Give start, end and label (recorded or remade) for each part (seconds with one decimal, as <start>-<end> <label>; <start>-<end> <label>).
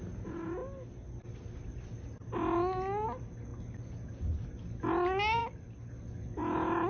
0.0-6.9 recorded